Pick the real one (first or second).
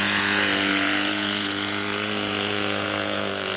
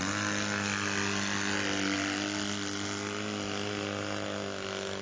second